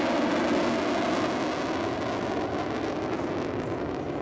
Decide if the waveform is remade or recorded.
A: recorded